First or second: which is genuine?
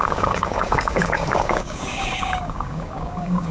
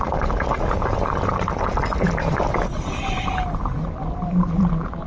second